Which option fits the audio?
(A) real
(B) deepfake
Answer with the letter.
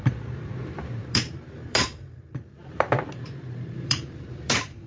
B